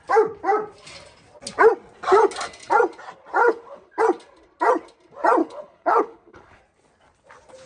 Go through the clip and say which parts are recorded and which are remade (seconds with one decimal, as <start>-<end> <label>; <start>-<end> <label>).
0.0-3.4 recorded; 3.4-4.0 remade; 4.0-5.4 recorded; 5.4-6.6 remade; 6.6-7.7 recorded